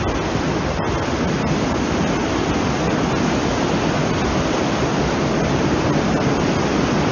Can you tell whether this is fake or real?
real